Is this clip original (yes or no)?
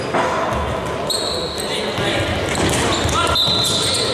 yes